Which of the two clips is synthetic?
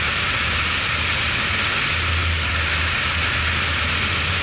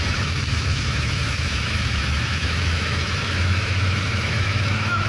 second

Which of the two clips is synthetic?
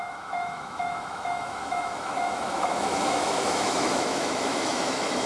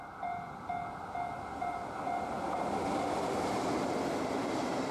first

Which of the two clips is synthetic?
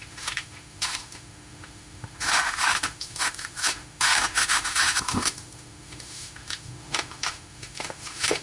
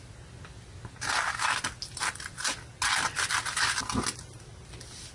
first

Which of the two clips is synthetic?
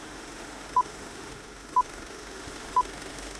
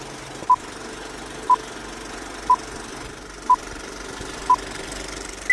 first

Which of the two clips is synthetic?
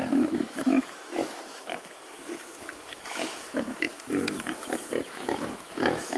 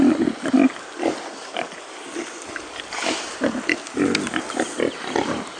first